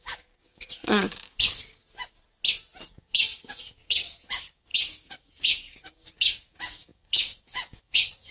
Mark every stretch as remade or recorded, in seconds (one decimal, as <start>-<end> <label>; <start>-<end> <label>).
0.0-1.8 remade; 1.8-2.9 recorded; 2.9-8.3 remade